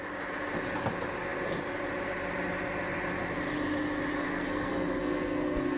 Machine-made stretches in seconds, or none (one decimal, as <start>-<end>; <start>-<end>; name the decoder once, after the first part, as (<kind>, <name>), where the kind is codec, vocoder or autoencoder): 4.2-5.8 (codec, SNAC)